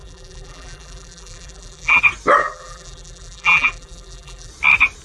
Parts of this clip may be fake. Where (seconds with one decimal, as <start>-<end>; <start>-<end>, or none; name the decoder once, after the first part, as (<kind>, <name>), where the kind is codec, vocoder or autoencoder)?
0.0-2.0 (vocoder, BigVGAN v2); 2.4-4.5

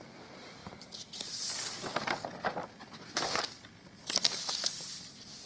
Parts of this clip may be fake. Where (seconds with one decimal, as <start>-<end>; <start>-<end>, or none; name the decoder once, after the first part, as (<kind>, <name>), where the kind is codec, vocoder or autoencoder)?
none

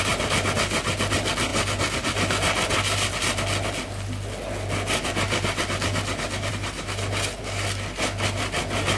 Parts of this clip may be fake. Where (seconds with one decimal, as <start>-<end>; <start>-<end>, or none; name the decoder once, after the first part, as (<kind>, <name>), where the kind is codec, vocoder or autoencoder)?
0.0-1.5 (vocoder, BigVGAN v2); 6.5-9.0

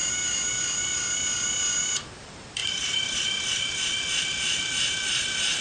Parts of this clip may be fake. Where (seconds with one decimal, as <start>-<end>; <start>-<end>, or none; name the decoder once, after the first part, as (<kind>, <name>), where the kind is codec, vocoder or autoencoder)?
2.2-5.6 (vocoder, BigVGAN v2)